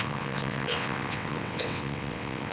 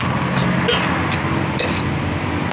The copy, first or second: first